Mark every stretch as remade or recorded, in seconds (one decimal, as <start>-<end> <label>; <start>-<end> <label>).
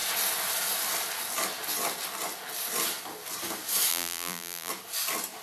0.0-3.9 recorded; 3.9-4.7 remade; 4.7-5.4 recorded